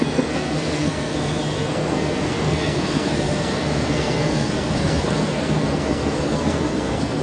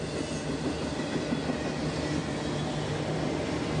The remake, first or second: first